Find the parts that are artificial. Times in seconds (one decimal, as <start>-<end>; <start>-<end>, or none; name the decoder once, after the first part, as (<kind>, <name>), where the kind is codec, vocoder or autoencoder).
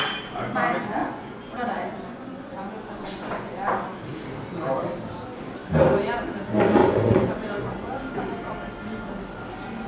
1.0-3.8 (vocoder, Vocos); 6.8-8.0